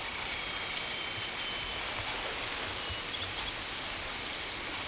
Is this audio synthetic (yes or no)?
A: no